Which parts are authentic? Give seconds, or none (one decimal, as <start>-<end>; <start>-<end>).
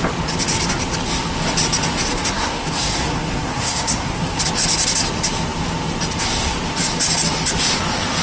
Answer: 0.0-2.1; 4.4-8.2